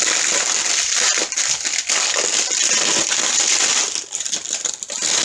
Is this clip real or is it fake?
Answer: fake